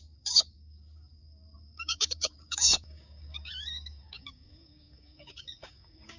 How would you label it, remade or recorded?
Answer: remade